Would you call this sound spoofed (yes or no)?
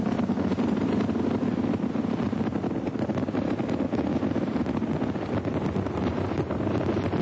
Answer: no